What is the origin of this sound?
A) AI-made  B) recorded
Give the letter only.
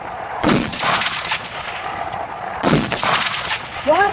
A